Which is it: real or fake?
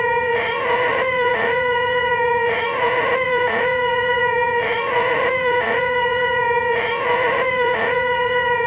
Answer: fake